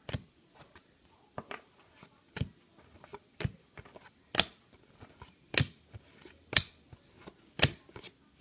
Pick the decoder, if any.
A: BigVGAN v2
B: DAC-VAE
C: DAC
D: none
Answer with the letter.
D